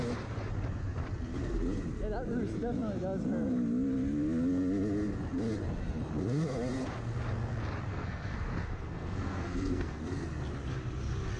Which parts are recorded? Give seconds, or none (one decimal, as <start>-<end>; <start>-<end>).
0.0-7.9; 10.3-11.4